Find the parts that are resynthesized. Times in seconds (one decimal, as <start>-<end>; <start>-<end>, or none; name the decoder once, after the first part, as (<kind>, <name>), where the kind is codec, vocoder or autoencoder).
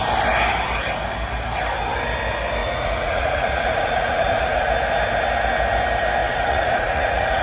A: 2.6-4.7 (vocoder, Vocos); 6.2-7.4